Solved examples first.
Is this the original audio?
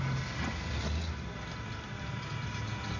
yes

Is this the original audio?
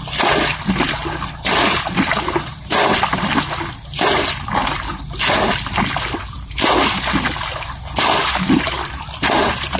yes